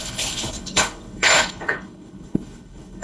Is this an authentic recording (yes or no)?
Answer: no